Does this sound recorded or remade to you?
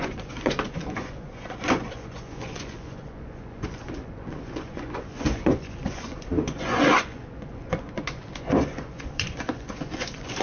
remade